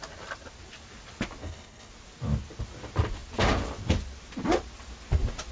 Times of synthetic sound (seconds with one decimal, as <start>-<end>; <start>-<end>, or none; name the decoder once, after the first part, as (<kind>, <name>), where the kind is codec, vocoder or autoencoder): 1.4-1.9 (codec, HILCodec)